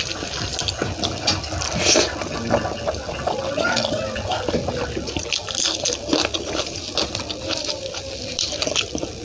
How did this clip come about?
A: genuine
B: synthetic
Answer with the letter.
A